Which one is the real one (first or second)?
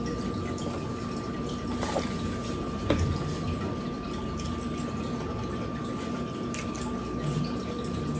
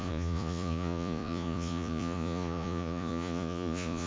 first